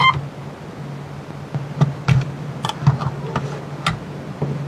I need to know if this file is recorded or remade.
recorded